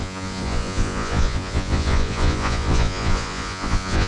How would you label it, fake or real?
fake